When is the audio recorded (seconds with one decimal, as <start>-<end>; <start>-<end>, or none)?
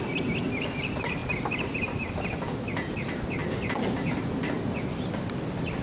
0.0-1.2; 2.1-5.8